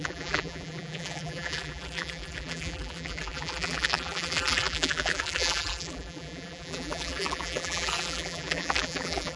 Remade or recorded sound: remade